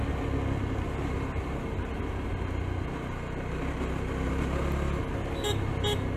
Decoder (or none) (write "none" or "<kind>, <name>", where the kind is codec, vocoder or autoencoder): none